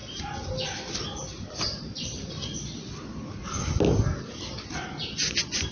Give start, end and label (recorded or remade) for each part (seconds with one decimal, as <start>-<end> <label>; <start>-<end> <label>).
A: 0.0-5.7 recorded